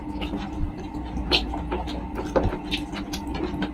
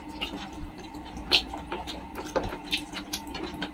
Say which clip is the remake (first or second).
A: second